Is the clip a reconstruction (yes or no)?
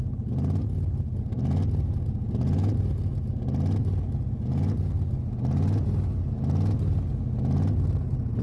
no